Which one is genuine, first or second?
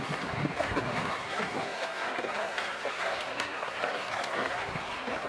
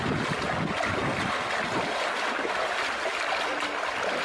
second